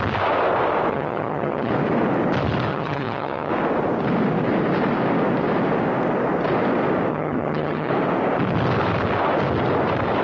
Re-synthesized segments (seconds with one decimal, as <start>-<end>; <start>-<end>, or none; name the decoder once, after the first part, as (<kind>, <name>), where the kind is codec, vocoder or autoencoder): 0.9-1.7 (vocoder, HiFi-GAN); 2.7-3.5; 7.1-7.9